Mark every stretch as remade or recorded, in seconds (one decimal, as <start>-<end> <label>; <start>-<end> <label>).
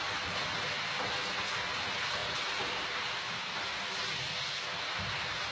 0.0-5.5 recorded